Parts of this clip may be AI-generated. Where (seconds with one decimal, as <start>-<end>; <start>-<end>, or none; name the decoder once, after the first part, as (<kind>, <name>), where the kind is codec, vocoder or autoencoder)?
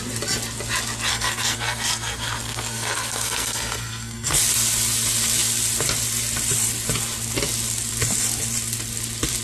1.1-4.4 (codec, SNAC)